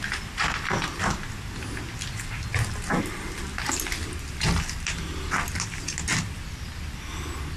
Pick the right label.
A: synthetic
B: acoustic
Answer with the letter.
B